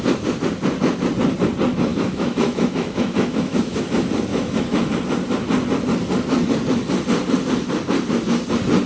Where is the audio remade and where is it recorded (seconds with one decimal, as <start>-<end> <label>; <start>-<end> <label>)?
0.0-1.9 recorded; 1.9-3.8 remade; 3.8-4.3 recorded; 4.3-4.9 remade; 4.9-8.9 recorded